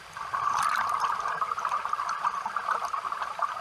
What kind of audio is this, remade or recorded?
remade